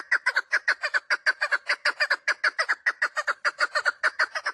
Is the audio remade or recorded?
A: recorded